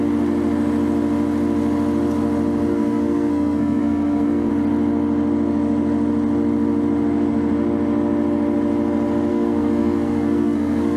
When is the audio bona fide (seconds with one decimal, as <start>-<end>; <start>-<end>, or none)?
0.0-2.7; 4.5-9.3

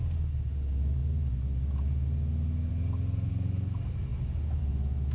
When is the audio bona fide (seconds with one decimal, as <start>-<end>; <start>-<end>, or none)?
0.0-5.1

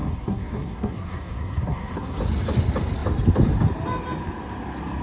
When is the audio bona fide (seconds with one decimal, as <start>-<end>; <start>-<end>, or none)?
2.2-5.0

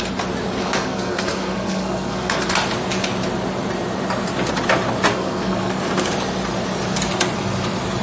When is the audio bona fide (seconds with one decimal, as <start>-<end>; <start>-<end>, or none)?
0.0-0.6; 2.5-5.1; 5.8-8.0

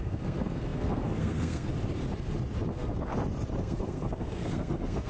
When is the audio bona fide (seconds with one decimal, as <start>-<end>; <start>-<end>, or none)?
1.7-2.7; 3.1-3.6

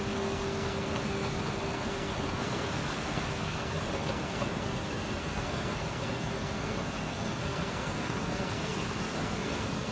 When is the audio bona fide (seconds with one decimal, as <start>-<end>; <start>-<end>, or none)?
none

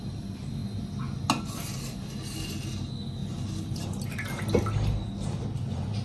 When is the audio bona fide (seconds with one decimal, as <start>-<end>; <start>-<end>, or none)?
0.0-6.0